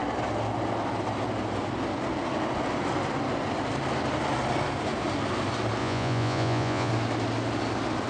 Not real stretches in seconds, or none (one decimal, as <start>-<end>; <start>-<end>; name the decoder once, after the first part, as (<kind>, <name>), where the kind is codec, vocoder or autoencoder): 5.8-6.9 (vocoder, Vocos)